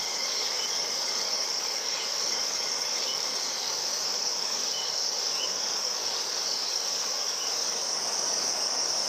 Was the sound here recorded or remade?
remade